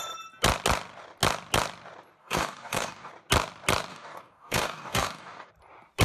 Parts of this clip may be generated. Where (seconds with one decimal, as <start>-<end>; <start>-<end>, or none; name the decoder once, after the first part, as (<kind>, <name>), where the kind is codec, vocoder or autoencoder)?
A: 2.2-3.1 (codec, DAC); 3.9-5.5

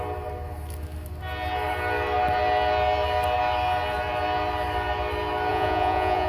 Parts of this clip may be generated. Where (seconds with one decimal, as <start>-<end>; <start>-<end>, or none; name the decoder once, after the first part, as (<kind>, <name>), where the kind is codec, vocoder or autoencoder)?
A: 5.5-6.3 (vocoder, Vocos)

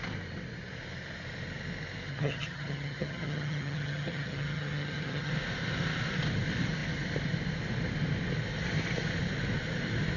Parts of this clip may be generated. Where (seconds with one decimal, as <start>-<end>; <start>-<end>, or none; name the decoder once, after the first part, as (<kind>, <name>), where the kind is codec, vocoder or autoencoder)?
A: 2.1-5.3 (vocoder, HiFi-GAN)

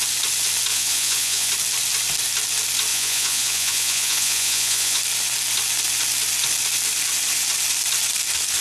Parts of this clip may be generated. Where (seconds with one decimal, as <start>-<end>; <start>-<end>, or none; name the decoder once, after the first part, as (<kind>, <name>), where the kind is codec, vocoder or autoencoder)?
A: 0.7-1.5 (vocoder, Vocos); 2.9-5.0

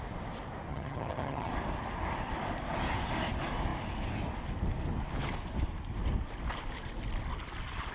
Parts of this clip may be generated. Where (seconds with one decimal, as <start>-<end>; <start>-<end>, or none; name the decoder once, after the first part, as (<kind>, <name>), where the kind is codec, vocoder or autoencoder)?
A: 0.7-1.5 (vocoder, HiFi-GAN)

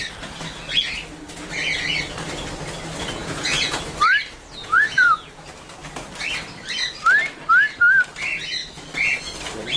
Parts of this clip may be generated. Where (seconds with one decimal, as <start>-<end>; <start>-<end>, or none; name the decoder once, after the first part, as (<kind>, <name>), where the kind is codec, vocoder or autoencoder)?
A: 3.2-3.8 (vocoder, Vocos); 4.6-5.3

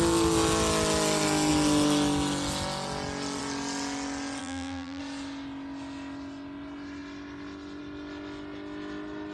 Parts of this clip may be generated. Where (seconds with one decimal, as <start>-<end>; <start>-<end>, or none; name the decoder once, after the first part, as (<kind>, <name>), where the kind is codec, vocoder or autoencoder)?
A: 4.4-5.0 (vocoder, BigVGAN v2)